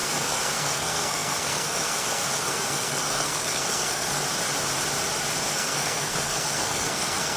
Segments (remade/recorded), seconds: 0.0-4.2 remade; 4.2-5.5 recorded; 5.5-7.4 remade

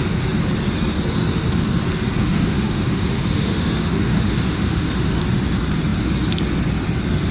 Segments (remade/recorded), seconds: 0.0-2.2 recorded; 2.2-5.2 remade; 5.2-7.3 recorded

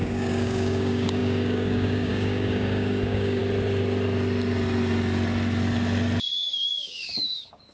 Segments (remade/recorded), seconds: 0.0-3.4 remade; 3.4-6.3 recorded; 6.3-7.7 remade